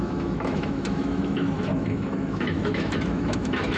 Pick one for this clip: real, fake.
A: fake